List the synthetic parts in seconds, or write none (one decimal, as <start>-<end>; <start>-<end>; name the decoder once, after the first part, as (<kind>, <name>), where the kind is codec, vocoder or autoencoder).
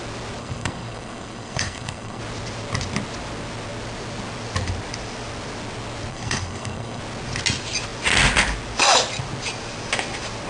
0.4-2.2 (codec, SNAC); 6.1-7.0